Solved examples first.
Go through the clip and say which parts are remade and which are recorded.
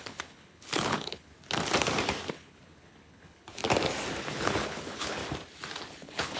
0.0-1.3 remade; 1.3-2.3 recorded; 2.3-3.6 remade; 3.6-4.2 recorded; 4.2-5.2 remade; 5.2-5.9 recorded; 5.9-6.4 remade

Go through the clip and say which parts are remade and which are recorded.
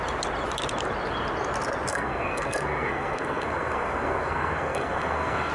0.0-1.9 recorded; 1.9-5.5 remade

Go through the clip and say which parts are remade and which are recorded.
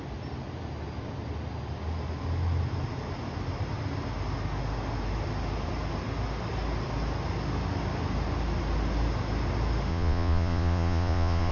0.0-9.9 recorded; 9.9-11.5 remade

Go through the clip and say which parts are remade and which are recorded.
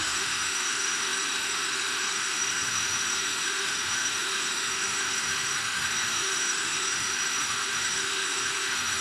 0.0-9.0 remade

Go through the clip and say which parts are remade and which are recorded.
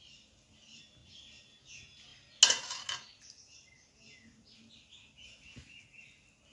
0.0-6.5 recorded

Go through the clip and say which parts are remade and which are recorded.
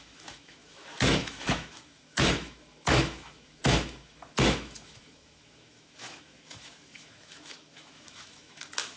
0.0-9.0 remade